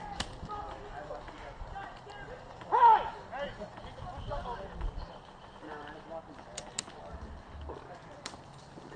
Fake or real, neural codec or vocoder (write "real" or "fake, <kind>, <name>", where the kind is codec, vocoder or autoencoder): real